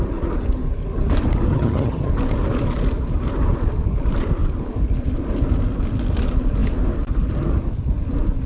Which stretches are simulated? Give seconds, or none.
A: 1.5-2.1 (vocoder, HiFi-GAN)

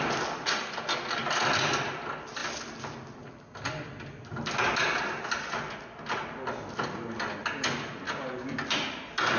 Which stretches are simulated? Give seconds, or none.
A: none

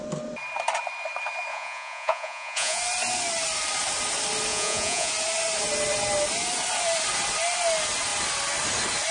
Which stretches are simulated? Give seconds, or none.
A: 1.5-2.8 (vocoder, Vocos); 4.5-5.1

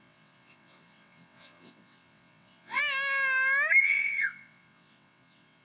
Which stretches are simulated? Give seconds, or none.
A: 0.0-2.8 (vocoder, WaveNeXt); 3.8-5.6

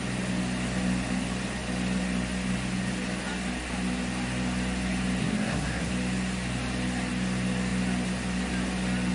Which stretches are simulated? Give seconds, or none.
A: 5.2-5.9 (codec, SNAC)

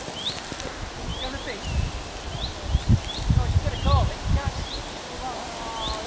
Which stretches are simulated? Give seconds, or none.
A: none